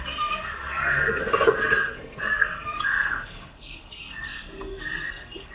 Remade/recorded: remade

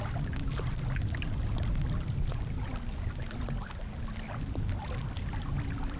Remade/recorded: recorded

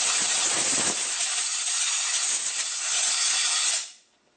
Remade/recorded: recorded